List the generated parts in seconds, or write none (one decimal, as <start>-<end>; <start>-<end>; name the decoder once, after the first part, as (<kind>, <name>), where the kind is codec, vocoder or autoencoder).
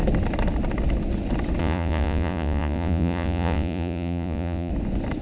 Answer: 1.6-4.7 (vocoder, Vocos)